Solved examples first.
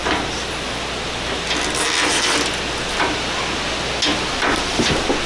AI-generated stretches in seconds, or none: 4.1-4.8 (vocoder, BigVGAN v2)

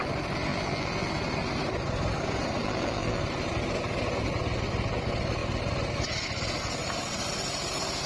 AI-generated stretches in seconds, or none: 0.5-1.1 (vocoder, BigVGAN v2); 2.6-3.2

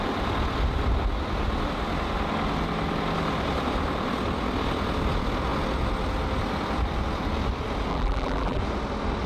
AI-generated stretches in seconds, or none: 7.9-8.6 (vocoder, BigVGAN v2)